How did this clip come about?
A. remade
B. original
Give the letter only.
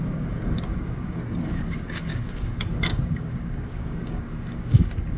A